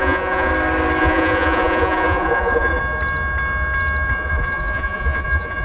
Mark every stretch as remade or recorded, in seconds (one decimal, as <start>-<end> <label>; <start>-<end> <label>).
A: 0.0-0.5 remade; 0.5-1.0 recorded; 1.0-2.8 remade; 2.8-4.1 recorded; 4.1-5.6 remade